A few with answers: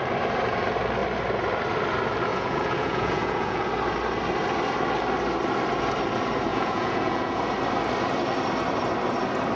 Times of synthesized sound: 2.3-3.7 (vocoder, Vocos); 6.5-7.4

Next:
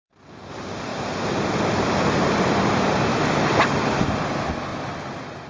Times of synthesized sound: 0.9-4.2 (vocoder, BigVGAN v2); 4.7-5.5

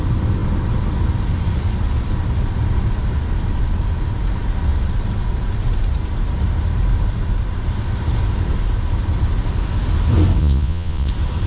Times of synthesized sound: 10.4-11.1 (vocoder, Vocos)